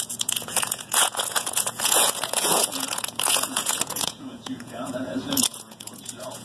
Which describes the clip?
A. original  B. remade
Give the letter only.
B